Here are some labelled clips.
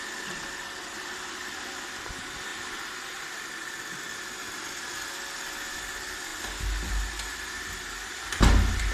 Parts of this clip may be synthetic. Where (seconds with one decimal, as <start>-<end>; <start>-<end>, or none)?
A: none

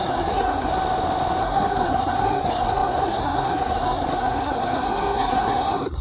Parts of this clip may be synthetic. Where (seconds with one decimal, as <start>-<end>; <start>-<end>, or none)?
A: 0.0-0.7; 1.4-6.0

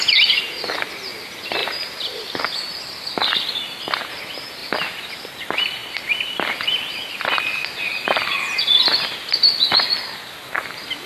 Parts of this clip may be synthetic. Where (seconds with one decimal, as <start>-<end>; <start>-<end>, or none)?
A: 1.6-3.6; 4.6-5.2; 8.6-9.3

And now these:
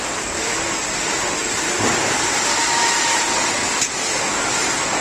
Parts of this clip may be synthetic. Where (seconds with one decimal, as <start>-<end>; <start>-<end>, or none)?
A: 0.0-1.4; 2.6-3.6; 4.2-5.0